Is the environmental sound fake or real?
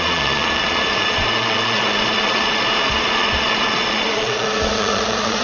fake